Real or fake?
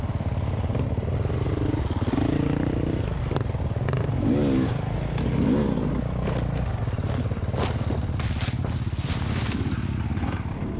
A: real